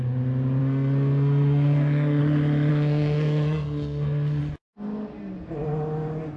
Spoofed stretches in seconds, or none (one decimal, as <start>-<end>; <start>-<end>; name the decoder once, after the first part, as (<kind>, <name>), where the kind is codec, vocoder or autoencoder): 0.6-2.2 (codec, SNAC); 2.7-4.4